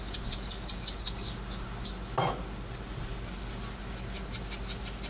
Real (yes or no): yes